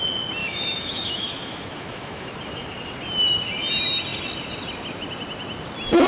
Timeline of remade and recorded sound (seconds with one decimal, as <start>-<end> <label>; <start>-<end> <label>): 0.0-0.4 recorded; 0.4-2.3 remade; 2.3-6.1 recorded